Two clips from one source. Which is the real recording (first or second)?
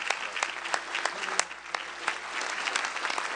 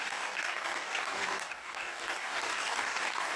first